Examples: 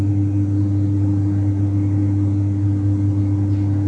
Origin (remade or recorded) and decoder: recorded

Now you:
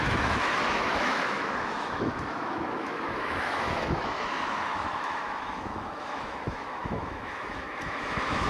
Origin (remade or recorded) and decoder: remade, autoencoder, DAC-VAE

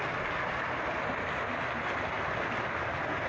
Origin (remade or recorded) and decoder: recorded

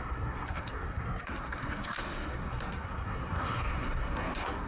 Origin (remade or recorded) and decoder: remade, codec, SNAC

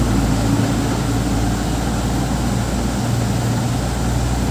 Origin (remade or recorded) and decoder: recorded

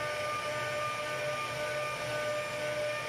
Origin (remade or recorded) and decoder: recorded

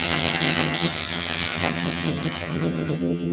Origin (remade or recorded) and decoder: remade, vocoder, HiFi-GAN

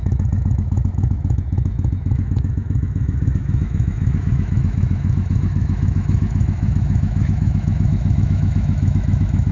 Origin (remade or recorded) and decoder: remade, autoencoder, DAC-VAE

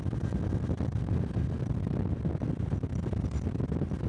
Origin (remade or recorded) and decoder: recorded